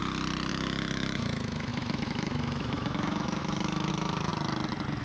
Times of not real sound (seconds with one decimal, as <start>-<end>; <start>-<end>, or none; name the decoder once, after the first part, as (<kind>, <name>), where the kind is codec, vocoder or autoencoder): 0.5-4.3 (autoencoder, DAC-VAE)